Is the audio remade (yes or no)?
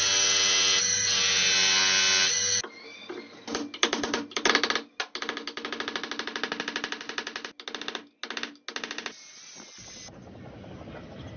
no